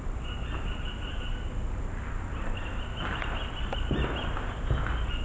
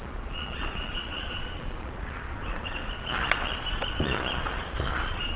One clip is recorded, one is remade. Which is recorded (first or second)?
first